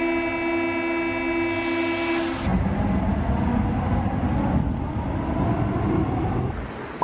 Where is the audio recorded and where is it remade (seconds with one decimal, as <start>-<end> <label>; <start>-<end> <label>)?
0.0-7.0 recorded